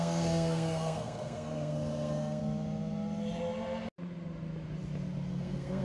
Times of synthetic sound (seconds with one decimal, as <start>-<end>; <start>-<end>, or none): 0.0-2.4; 5.3-5.8